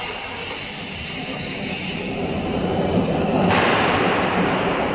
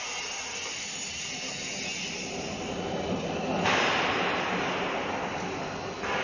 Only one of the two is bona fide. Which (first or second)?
second